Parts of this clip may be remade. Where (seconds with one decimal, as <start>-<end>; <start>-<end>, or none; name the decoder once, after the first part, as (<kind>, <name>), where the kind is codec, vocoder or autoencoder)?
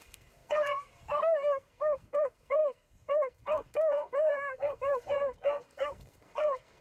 0.0-6.8 (codec, SNAC)